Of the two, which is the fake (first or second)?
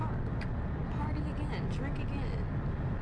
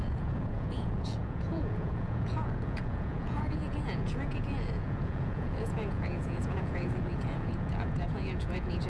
second